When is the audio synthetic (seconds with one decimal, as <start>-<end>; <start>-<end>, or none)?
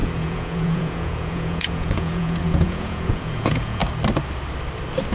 0.0-3.8